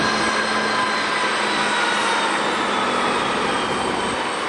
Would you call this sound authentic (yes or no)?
yes